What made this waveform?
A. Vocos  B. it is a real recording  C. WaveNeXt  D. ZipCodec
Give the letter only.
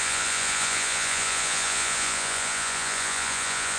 A